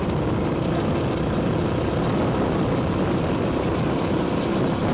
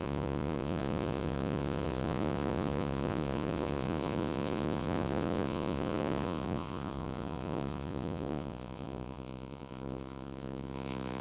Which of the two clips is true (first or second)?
first